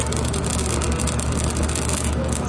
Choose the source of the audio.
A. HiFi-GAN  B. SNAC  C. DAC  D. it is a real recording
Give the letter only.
D